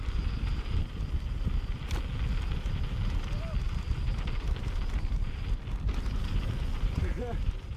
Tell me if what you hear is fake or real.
real